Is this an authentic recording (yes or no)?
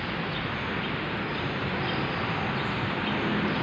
yes